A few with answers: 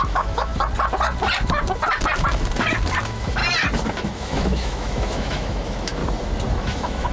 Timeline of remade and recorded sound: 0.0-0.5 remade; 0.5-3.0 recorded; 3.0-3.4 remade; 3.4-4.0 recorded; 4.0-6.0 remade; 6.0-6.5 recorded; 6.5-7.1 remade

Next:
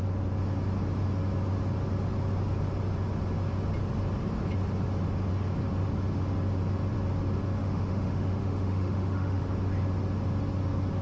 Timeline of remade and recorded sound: 0.0-7.6 recorded; 7.6-9.4 remade; 9.4-11.0 recorded

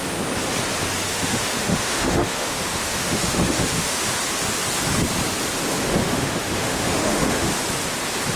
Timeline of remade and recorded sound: 0.0-1.1 recorded; 1.1-4.2 remade; 4.2-6.0 recorded; 6.0-7.5 remade; 7.5-8.4 recorded

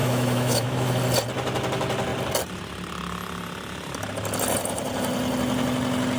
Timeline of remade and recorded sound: 0.0-0.9 remade; 0.9-6.2 recorded

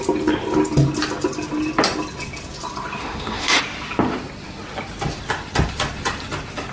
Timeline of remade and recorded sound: 0.0-3.0 recorded; 3.0-3.6 remade; 3.6-6.7 recorded